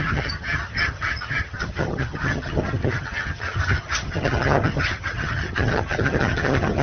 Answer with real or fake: fake